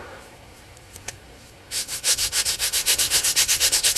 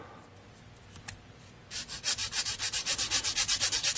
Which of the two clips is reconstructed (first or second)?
first